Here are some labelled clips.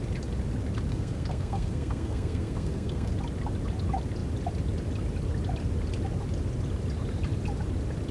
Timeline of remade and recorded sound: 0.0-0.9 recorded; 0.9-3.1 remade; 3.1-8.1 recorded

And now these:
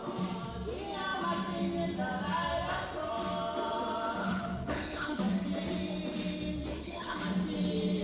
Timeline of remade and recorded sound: 0.0-4.2 recorded; 4.2-5.2 remade; 5.2-6.7 recorded; 6.7-7.2 remade; 7.2-8.0 recorded

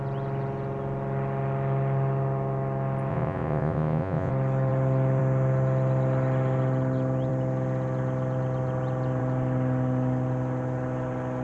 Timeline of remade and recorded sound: 0.0-3.1 recorded; 3.1-4.3 remade; 4.3-11.4 recorded

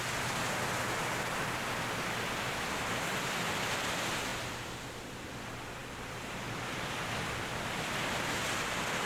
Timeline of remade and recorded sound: 0.0-9.1 recorded

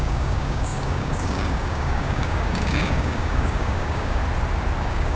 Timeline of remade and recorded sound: 0.0-4.2 remade; 4.2-4.8 recorded; 4.8-5.2 remade

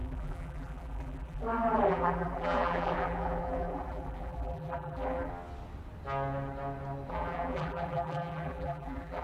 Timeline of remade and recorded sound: 0.0-5.3 remade; 5.3-7.1 recorded; 7.1-9.2 remade